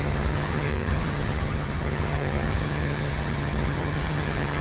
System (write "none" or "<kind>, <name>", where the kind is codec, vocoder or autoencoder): vocoder, HiFi-GAN